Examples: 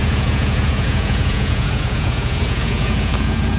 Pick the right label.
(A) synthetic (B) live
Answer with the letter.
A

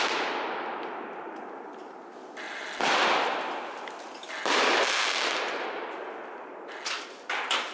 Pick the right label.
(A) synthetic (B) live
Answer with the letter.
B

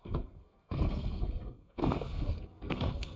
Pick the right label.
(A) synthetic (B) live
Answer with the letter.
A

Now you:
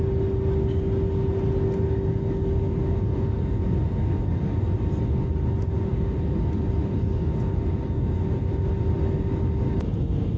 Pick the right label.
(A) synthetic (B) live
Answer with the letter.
B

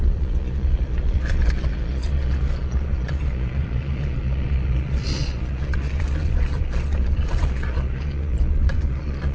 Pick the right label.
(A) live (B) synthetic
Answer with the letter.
B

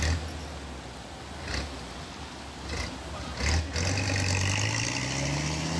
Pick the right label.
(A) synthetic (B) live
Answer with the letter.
B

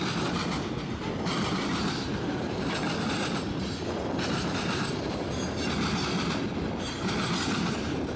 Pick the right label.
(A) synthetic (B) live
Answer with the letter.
B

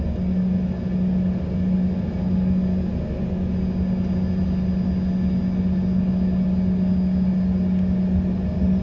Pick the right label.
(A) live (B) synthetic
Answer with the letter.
A